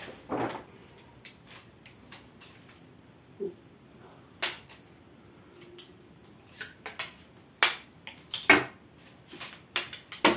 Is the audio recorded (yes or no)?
yes